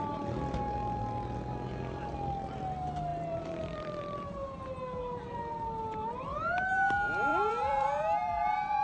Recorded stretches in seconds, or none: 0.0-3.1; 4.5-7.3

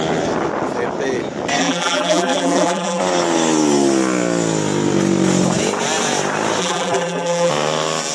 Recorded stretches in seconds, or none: 0.0-1.6; 3.0-6.6; 7.5-8.1

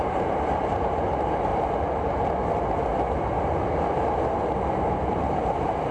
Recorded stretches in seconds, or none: 1.5-5.0